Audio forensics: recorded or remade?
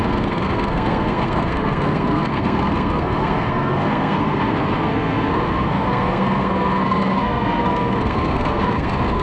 remade